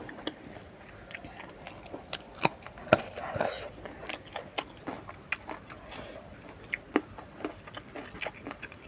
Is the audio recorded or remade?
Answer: recorded